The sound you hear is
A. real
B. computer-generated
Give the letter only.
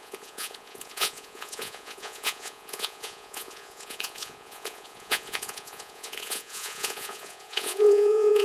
B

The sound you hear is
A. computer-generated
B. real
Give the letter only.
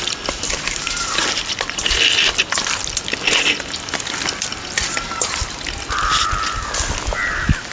B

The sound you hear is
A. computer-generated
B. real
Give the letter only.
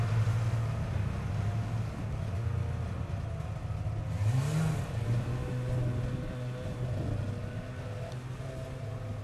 B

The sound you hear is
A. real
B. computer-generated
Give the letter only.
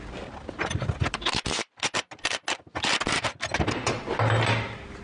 A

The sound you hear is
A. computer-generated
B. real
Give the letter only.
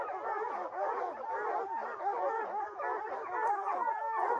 B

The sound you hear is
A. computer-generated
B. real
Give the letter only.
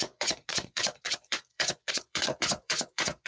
A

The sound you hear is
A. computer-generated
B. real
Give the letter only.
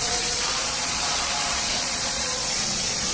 A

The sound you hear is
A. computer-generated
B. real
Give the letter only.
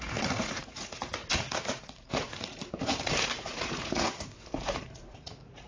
A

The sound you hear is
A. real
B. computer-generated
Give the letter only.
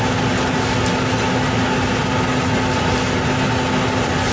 A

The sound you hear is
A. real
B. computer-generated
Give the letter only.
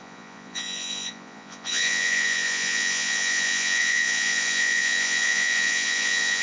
B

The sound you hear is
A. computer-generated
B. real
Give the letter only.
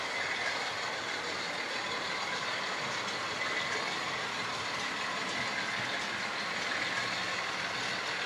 B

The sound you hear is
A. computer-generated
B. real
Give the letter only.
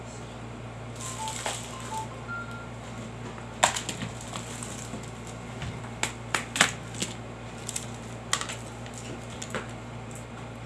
B